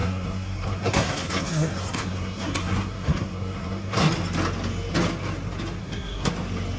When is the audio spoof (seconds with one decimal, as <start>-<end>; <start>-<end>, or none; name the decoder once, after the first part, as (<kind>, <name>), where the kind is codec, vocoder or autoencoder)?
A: 0.0-4.1 (codec, SNAC); 5.8-6.3